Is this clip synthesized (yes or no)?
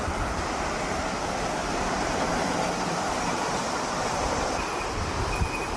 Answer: yes